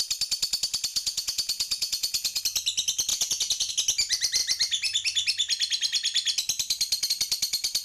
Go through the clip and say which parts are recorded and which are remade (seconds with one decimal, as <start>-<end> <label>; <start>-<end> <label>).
0.0-0.9 recorded; 0.9-2.4 remade; 2.4-3.1 recorded; 3.1-3.7 remade; 3.7-7.8 recorded